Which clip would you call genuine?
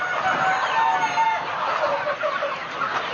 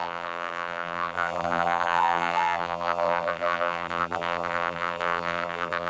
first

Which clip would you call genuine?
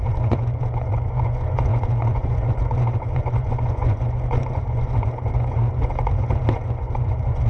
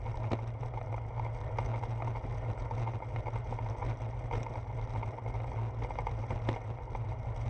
second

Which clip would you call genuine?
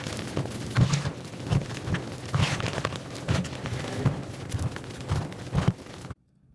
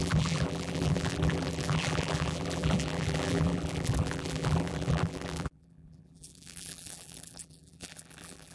first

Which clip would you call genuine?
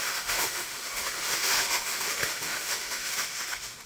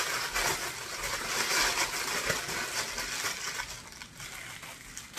second